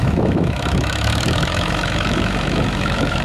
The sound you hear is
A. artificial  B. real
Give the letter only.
A